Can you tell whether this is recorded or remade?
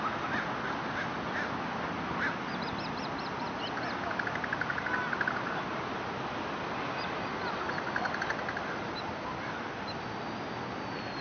recorded